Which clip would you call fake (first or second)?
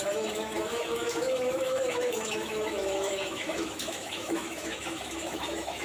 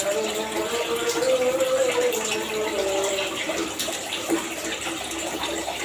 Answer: first